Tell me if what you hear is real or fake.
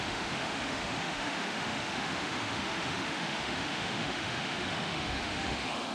fake